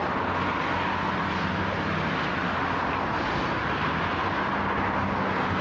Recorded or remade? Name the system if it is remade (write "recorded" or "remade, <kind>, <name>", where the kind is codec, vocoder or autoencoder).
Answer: recorded